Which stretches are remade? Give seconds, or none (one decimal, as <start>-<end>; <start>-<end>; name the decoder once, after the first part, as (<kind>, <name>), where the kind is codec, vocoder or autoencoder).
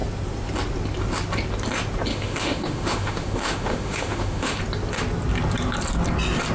2.1-4.6 (autoencoder, DAC-VAE)